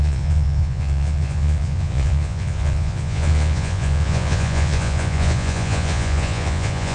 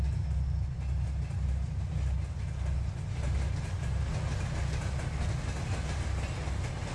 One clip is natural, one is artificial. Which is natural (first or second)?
second